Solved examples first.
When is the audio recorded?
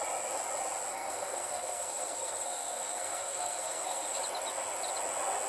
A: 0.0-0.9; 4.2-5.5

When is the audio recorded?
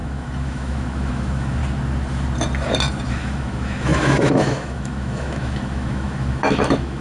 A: 1.6-3.1